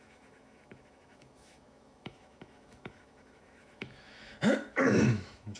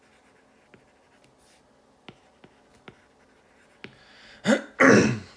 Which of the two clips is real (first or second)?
second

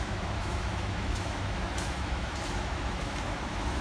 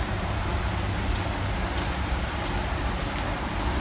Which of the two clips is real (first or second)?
second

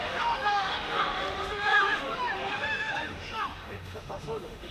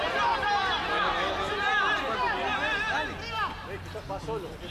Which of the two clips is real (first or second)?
second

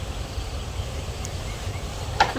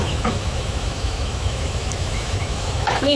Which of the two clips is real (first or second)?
first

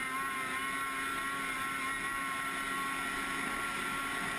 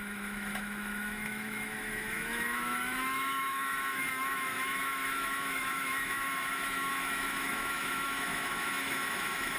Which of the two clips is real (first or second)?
first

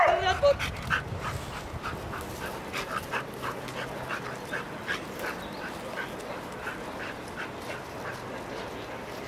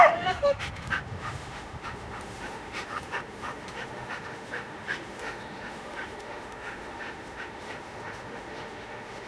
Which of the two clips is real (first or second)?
first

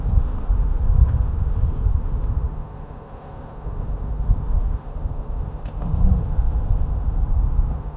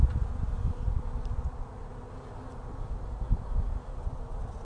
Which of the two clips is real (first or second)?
second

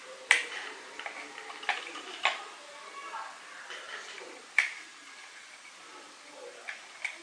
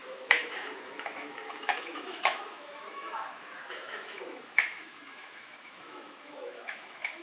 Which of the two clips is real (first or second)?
first